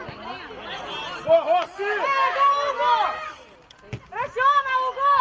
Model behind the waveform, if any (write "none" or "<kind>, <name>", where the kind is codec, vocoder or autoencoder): none